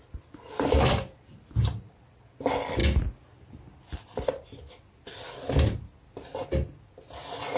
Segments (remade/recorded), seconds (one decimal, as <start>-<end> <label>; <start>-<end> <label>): 0.0-7.6 recorded